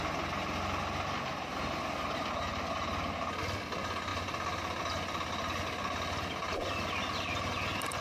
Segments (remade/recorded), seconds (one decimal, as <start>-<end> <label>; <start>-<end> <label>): 0.0-8.0 recorded